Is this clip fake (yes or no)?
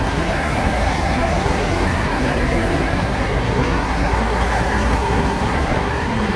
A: yes